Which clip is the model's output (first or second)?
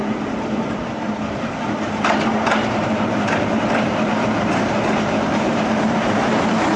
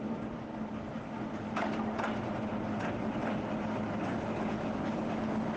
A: first